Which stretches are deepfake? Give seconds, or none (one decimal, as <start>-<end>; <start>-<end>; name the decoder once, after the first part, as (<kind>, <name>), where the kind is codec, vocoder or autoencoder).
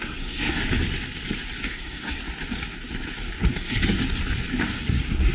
0.0-0.6 (codec, SNAC); 1.6-2.2; 3.5-4.0; 4.5-5.3